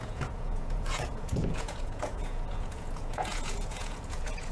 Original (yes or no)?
no